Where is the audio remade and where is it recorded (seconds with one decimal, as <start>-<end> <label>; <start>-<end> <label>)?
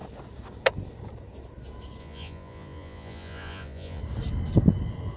0.0-2.0 recorded; 2.0-4.0 remade; 4.0-5.2 recorded